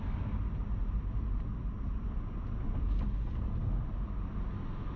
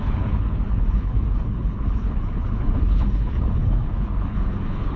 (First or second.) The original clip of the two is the first